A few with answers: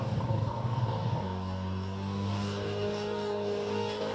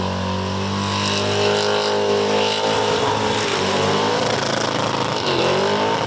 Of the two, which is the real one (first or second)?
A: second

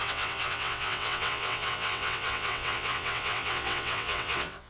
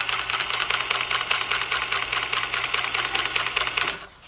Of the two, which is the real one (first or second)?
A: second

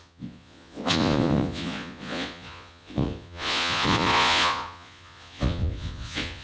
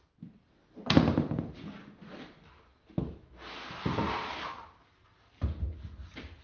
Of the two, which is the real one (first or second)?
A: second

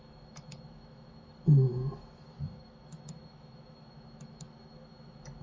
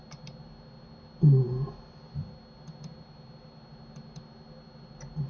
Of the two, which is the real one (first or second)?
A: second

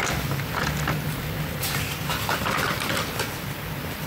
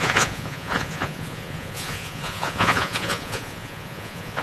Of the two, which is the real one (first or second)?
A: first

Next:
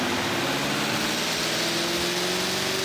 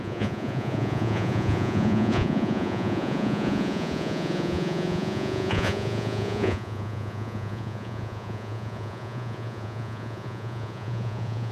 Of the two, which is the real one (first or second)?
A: first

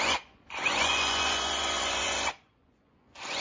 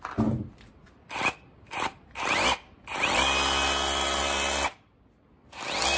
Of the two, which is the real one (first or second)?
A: second